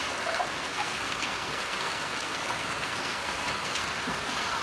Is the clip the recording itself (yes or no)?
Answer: no